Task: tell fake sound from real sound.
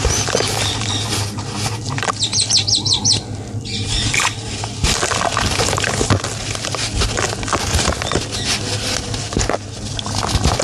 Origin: real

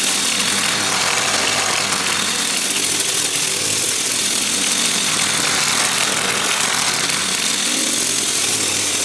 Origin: real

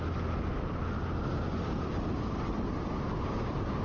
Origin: real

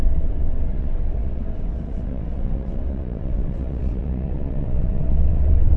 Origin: fake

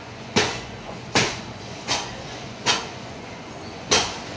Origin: fake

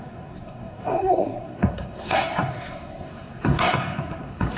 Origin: fake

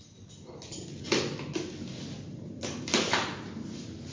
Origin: real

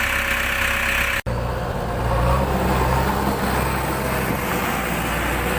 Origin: real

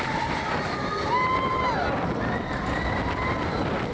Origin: real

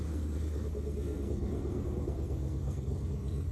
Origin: fake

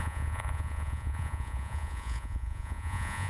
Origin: fake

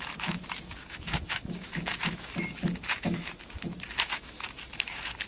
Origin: fake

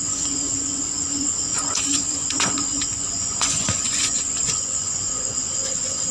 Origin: fake